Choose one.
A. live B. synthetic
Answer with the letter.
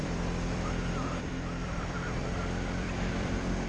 B